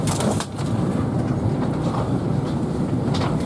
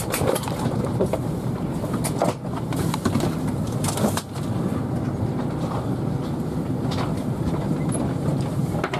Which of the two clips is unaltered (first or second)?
second